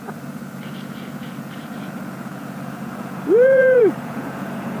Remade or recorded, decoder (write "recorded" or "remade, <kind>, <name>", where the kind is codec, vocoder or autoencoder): remade, vocoder, Vocos